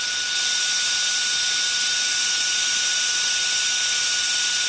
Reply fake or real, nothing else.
real